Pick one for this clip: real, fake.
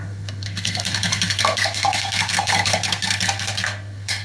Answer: fake